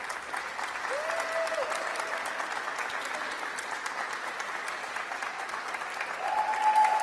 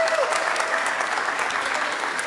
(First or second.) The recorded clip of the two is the first